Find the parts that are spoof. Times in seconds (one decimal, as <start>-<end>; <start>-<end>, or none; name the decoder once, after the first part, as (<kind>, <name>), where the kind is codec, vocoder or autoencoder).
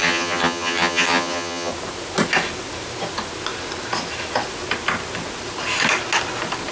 0.0-1.7 (vocoder, HiFi-GAN)